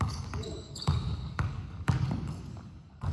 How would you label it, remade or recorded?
remade